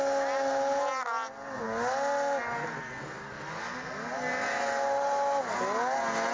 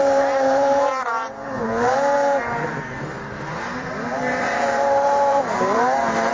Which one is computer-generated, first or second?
second